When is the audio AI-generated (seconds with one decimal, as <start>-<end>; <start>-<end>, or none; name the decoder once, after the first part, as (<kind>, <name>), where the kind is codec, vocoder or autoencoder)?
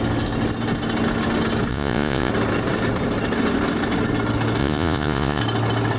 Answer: 1.7-2.3 (vocoder, Vocos); 4.6-5.4